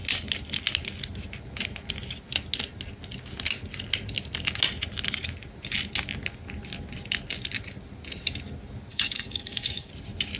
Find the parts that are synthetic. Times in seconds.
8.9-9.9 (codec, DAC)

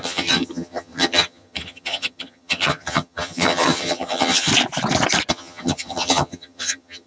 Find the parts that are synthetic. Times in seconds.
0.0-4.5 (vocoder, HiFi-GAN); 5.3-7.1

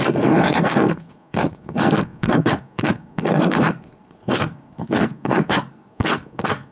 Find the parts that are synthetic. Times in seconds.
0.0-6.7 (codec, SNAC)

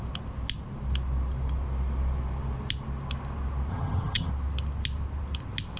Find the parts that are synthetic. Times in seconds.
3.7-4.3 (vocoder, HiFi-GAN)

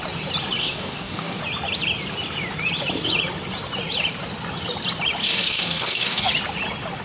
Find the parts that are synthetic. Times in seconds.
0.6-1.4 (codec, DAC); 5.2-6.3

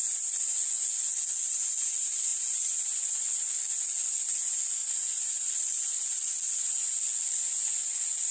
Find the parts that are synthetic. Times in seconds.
none

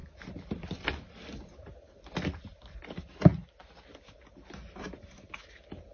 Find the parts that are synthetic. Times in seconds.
0.0-2.9 (vocoder, BigVGAN v2)